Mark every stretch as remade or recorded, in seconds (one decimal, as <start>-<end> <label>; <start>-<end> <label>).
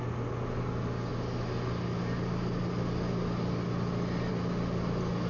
0.0-5.3 recorded